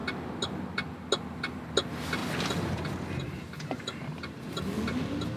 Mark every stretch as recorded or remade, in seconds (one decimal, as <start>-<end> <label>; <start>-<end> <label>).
0.0-2.2 recorded; 2.2-4.6 remade; 4.6-5.4 recorded